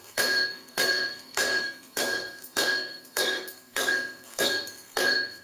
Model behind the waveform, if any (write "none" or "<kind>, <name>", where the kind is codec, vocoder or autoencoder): codec, SNAC